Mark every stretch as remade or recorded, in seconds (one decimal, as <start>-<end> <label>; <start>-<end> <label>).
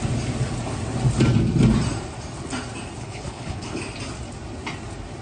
0.0-3.0 recorded; 3.0-3.7 remade; 3.7-5.2 recorded